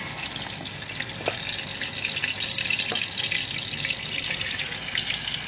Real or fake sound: real